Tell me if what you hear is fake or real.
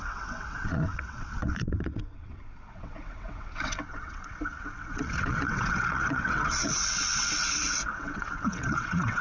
fake